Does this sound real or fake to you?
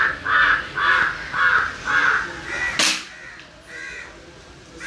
real